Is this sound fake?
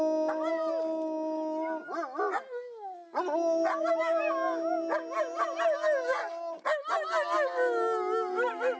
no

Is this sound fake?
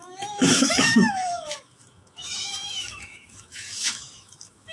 yes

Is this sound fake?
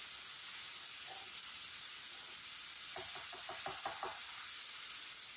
no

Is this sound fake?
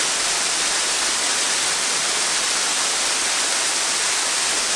no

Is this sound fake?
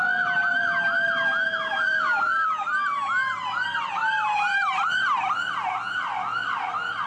no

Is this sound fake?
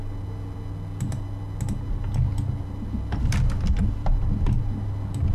no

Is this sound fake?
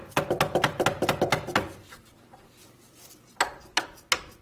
no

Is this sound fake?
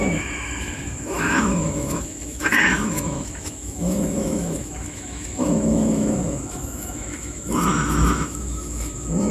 yes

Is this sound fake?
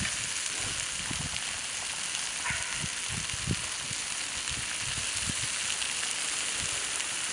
no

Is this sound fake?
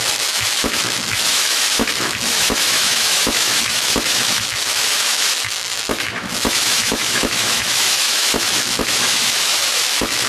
yes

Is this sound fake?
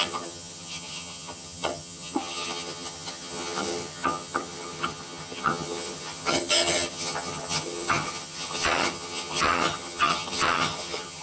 yes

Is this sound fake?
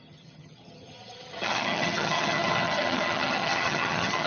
yes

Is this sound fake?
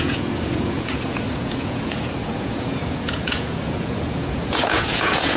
yes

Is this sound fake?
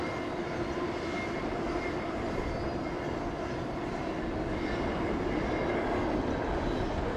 no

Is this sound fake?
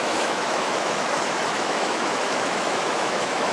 yes